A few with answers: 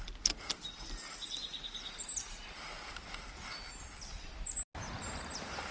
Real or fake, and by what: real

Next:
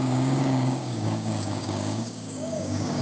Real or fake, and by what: fake, codec, DAC